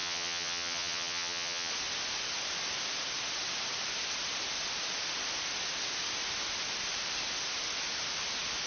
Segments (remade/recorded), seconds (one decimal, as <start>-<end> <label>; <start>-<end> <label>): 0.0-1.7 remade; 1.7-8.7 recorded